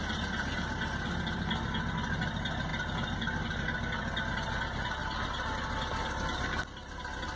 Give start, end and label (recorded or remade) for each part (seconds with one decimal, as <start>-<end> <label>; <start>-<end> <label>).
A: 0.0-7.4 recorded